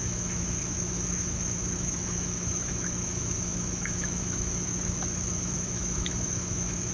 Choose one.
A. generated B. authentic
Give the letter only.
A